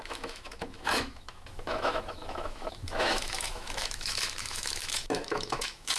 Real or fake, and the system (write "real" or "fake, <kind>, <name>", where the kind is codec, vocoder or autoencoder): fake, autoencoder, DAC-VAE